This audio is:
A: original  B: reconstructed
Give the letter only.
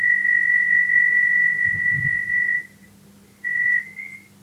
A